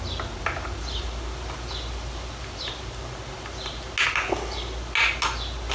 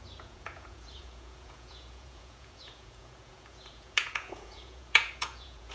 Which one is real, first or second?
first